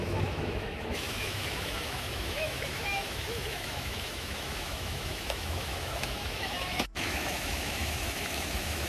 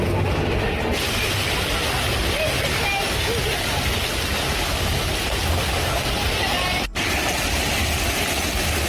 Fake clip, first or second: first